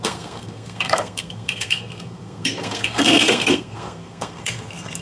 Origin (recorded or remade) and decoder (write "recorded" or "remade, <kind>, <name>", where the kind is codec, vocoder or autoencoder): remade, codec, SNAC